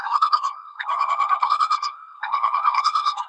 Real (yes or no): no